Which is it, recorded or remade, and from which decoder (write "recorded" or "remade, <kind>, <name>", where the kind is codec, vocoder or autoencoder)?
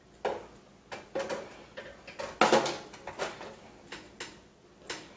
recorded